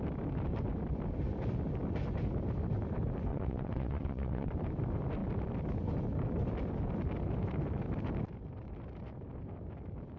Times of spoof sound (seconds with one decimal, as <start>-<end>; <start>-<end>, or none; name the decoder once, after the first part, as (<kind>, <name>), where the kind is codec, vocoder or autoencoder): 3.3-4.5 (vocoder, WaveNeXt)